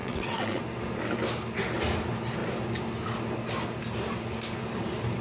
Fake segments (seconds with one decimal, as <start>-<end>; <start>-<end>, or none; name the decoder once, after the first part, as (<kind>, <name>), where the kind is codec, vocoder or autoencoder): 0.0-0.6 (vocoder, WaveNeXt)